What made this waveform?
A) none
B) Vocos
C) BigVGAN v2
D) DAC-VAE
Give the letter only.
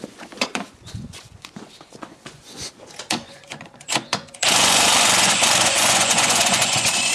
B